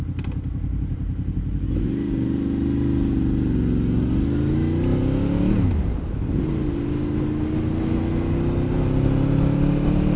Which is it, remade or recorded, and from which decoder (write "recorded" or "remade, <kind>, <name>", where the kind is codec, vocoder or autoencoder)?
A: recorded